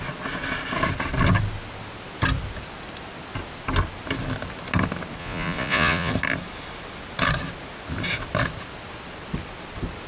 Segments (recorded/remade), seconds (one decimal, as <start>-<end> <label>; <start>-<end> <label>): 0.0-5.2 recorded; 5.2-6.1 remade; 6.1-10.1 recorded